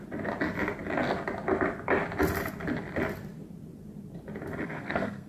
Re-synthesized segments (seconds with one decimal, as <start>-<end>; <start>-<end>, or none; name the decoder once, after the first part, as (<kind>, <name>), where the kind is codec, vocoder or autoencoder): 4.6-5.3 (codec, SNAC)